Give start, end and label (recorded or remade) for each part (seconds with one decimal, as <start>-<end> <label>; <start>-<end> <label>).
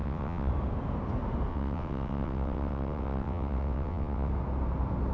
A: 0.0-0.5 remade; 0.5-1.5 recorded; 1.5-4.3 remade; 4.3-5.1 recorded